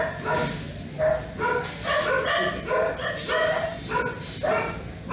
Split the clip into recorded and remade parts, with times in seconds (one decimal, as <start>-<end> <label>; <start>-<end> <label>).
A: 0.0-5.1 recorded